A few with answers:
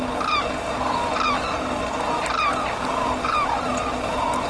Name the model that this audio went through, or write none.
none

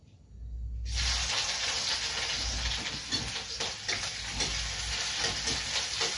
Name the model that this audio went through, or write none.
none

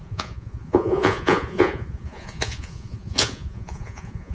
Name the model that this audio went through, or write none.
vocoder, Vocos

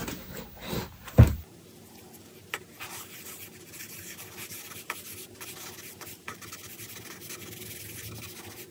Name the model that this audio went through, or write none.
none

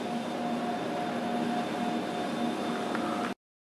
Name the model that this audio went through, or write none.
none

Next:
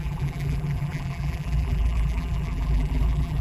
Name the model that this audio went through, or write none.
vocoder, BigVGAN v2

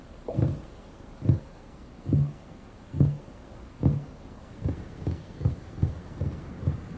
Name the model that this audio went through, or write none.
codec, SNAC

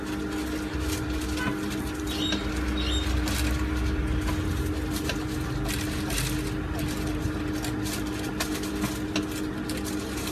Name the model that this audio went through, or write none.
none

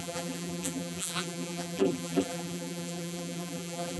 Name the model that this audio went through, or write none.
vocoder, BigVGAN v2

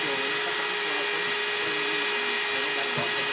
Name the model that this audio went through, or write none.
none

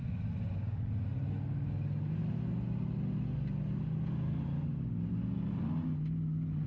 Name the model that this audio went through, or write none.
none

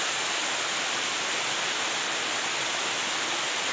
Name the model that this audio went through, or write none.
none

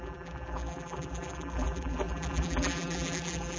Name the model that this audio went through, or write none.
vocoder, BigVGAN v2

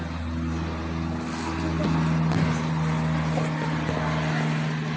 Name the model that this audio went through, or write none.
none